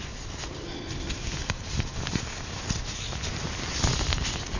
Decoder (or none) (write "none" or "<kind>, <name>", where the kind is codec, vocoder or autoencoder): none